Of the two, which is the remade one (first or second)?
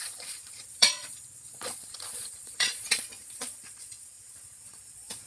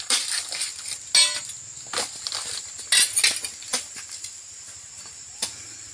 first